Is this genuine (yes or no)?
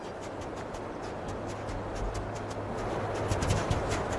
yes